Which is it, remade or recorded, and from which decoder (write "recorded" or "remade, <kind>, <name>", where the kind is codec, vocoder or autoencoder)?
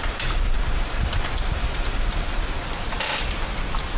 remade, vocoder, BigVGAN v2